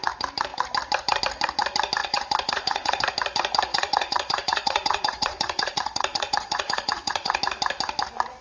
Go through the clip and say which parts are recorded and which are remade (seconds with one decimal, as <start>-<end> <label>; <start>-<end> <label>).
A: 0.0-2.0 recorded; 2.0-3.0 remade; 3.0-3.7 recorded; 3.7-7.4 remade; 7.4-8.4 recorded